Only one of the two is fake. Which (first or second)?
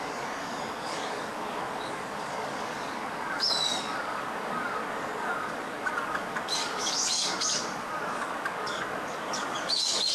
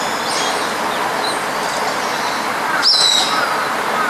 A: first